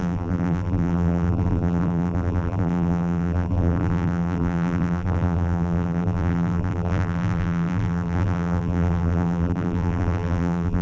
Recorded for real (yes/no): no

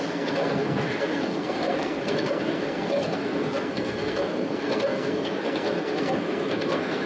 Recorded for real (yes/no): no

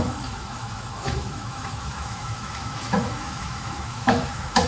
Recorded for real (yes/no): no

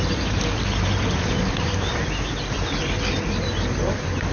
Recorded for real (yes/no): yes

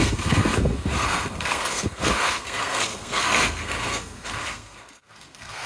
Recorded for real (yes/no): no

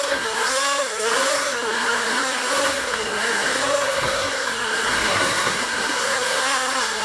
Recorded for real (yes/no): no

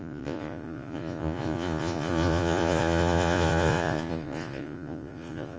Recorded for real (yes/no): no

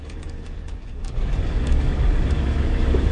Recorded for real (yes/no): no